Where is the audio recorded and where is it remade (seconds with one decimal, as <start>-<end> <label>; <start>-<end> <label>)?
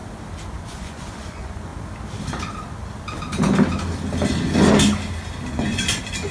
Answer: 0.0-0.6 recorded; 0.6-1.7 remade; 1.7-5.5 recorded; 5.5-6.3 remade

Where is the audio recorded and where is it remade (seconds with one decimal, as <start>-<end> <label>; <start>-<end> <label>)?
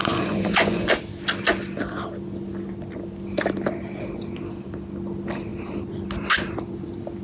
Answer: 0.0-0.9 remade; 0.9-7.2 recorded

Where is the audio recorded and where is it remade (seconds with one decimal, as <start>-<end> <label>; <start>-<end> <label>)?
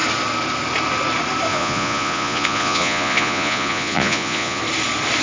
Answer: 0.0-1.5 recorded; 1.5-4.6 remade; 4.6-5.2 recorded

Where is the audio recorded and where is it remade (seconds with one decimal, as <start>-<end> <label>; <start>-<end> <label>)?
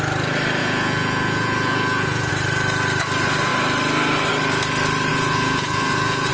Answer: 0.0-0.6 recorded; 0.6-2.3 remade; 2.3-5.1 recorded; 5.1-6.3 remade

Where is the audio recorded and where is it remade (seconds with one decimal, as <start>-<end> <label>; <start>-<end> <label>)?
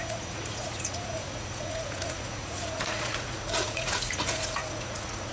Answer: 0.0-5.3 remade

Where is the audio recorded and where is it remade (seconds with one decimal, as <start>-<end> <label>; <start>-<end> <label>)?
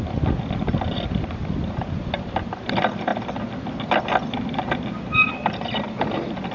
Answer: 0.0-6.5 recorded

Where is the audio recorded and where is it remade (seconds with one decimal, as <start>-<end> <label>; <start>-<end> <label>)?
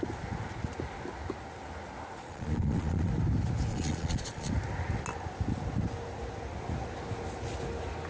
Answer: 0.0-2.2 recorded; 2.2-3.1 remade; 3.1-3.7 recorded; 3.7-4.5 remade; 4.5-8.1 recorded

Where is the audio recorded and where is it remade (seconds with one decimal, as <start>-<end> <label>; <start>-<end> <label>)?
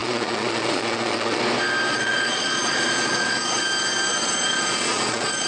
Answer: 0.0-1.4 remade; 1.4-1.9 recorded; 1.9-3.6 remade; 3.6-4.1 recorded; 4.1-5.5 remade